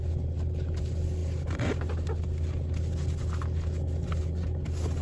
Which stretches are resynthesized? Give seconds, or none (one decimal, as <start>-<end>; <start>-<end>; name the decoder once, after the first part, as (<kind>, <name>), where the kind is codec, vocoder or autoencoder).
none